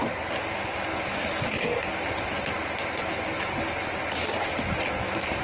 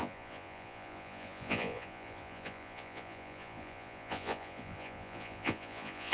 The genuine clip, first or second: first